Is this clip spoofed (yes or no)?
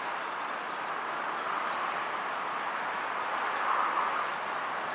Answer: no